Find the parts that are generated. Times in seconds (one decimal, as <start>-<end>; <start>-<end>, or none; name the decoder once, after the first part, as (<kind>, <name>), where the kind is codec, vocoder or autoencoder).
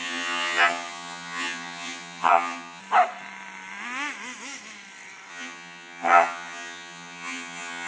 0.0-2.8 (vocoder, HiFi-GAN); 5.3-7.9